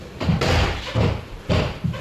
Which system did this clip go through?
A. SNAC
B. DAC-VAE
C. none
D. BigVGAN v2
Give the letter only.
C